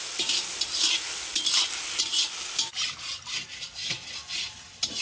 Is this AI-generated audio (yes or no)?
no